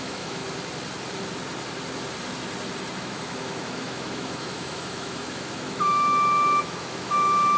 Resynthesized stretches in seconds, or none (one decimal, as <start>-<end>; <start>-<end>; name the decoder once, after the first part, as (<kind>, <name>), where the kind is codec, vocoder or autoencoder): 0.0-0.4 (autoencoder, DAC-VAE); 3.0-7.6